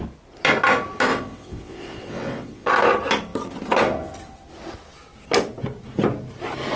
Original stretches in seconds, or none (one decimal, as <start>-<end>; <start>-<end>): 0.0-1.1; 2.7-6.8